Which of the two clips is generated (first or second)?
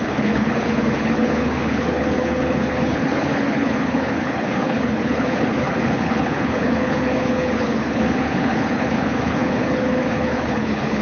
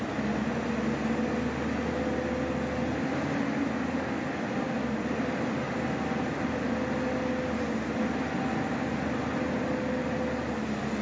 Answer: first